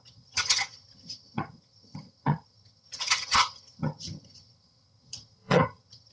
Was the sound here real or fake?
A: fake